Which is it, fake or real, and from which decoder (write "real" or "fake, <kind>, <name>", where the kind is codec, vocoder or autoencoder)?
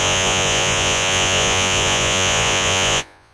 fake, vocoder, Vocos